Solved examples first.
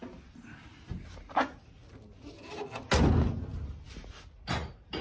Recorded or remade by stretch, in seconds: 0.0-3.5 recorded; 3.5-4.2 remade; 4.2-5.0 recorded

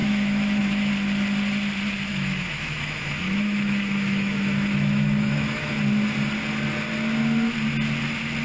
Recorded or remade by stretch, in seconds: 0.0-0.9 remade; 0.9-2.1 recorded; 2.1-5.8 remade; 5.8-8.4 recorded

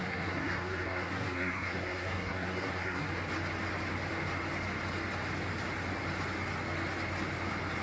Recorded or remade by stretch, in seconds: 0.0-3.1 remade; 3.1-7.8 recorded

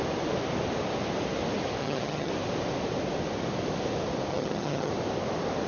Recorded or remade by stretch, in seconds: 0.0-1.8 recorded; 1.8-2.3 remade; 2.3-4.3 recorded; 4.3-4.9 remade; 4.9-5.7 recorded

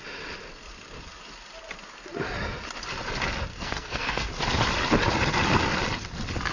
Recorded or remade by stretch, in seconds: 0.0-3.5 recorded; 3.5-4.3 remade; 4.3-6.5 recorded

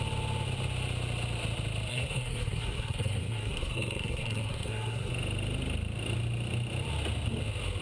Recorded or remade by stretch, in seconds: 0.0-1.9 recorded; 1.9-5.1 remade; 5.1-7.8 recorded

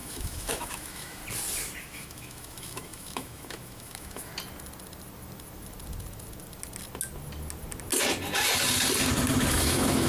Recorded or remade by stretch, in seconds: 0.0-1.2 remade; 1.2-1.8 recorded; 1.8-4.3 remade; 4.3-9.5 recorded; 9.5-10.1 remade